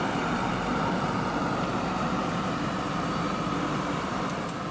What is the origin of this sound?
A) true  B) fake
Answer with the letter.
B